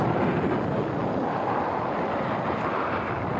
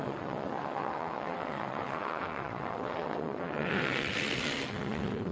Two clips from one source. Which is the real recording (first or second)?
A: first